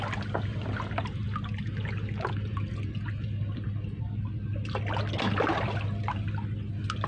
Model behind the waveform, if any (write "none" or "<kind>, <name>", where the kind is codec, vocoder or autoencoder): none